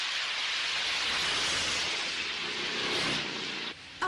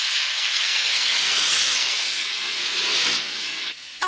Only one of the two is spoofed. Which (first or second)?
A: second